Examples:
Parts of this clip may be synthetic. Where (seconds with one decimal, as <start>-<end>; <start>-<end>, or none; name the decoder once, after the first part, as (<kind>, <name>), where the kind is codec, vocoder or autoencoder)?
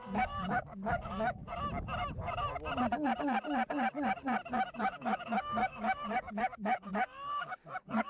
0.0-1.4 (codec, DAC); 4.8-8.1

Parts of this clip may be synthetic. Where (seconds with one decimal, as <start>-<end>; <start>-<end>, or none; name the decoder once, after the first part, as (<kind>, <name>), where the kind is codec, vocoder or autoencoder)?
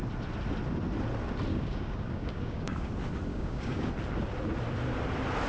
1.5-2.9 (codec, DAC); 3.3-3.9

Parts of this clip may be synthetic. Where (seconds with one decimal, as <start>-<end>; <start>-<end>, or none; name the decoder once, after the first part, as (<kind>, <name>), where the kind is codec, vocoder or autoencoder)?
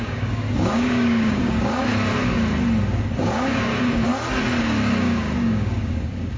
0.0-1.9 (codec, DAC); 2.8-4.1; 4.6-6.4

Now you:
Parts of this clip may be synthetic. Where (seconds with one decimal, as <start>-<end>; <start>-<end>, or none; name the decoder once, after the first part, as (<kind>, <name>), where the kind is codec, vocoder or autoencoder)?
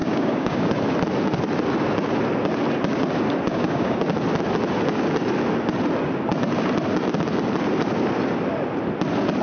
0.0-0.7 (codec, DAC); 3.5-4.0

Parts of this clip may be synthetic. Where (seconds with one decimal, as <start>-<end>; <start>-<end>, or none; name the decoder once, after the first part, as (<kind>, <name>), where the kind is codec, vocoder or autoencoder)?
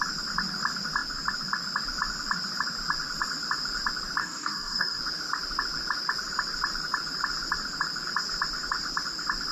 4.2-5.0 (codec, DAC)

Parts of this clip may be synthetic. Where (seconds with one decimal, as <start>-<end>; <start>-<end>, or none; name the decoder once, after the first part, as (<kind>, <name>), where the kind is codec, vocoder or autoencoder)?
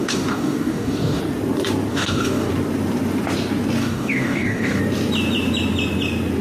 0.0-1.2 (codec, DAC); 1.9-2.5; 3.8-4.8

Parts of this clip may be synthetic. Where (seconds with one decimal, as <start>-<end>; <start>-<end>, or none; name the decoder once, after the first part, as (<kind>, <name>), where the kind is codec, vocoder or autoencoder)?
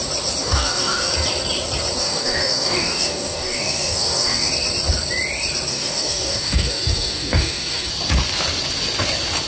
0.4-1.1 (codec, DAC); 2.0-4.5; 5.7-7.9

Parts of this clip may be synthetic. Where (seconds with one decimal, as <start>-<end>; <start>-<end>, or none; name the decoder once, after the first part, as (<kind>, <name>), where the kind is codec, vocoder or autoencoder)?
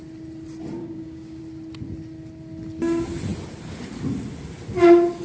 0.8-1.4 (codec, DAC)